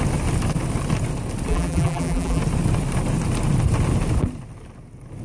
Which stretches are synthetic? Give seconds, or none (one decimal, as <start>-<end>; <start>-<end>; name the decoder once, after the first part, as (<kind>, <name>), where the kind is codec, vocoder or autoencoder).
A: 1.5-2.4 (vocoder, BigVGAN v2)